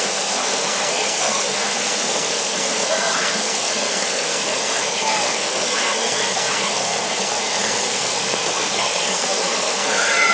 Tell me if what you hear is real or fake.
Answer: fake